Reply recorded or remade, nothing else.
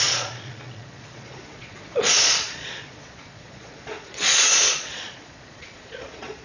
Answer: remade